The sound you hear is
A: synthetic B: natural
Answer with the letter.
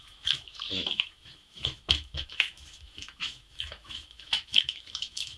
A